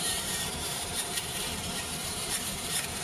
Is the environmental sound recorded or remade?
remade